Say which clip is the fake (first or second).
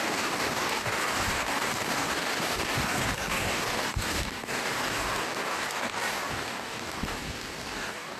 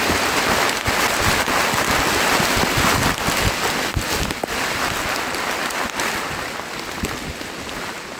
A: first